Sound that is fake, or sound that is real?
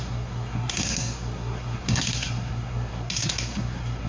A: fake